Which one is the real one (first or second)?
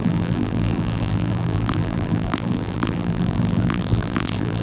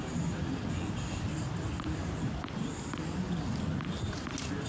second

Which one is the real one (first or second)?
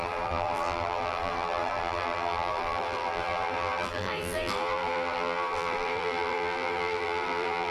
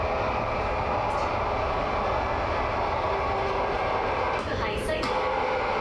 second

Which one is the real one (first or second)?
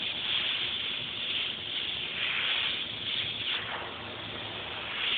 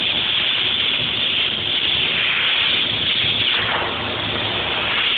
first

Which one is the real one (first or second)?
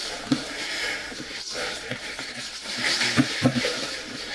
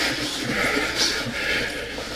second